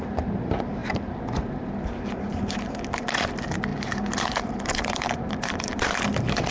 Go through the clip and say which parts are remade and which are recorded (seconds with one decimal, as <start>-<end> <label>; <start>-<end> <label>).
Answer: 0.0-6.5 remade